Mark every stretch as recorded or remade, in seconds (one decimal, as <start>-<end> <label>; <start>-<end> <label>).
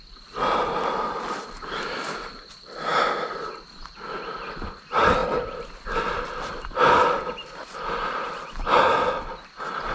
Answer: 0.0-9.9 recorded